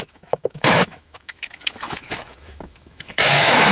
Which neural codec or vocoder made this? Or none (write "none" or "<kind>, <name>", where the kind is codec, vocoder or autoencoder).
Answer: autoencoder, DAC-VAE